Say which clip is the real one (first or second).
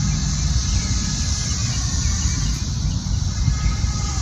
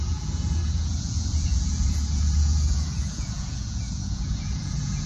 first